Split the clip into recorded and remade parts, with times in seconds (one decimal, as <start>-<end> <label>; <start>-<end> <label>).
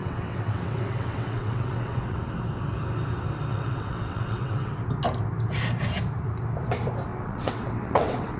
0.0-2.2 remade; 2.2-3.5 recorded; 3.5-4.7 remade; 4.7-7.1 recorded; 7.1-8.4 remade